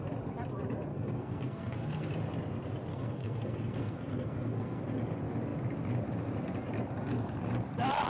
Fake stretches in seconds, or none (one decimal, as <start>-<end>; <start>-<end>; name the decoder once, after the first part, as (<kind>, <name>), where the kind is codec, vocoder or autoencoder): 0.9-2.1 (codec, SNAC); 2.9-4.8